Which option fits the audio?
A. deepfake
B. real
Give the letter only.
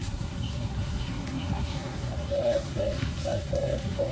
A